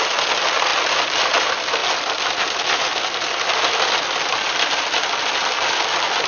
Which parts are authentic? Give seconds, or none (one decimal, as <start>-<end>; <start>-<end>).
0.0-6.3

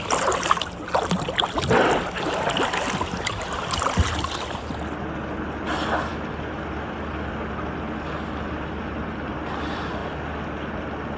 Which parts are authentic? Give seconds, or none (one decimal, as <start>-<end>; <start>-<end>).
0.0-11.2

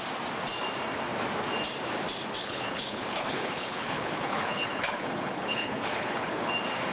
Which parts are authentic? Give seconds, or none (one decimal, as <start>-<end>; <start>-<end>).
0.0-2.4; 6.5-6.9